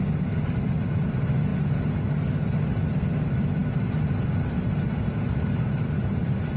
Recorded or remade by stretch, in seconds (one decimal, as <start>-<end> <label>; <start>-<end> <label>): 0.0-6.6 recorded